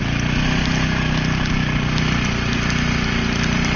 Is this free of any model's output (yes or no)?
yes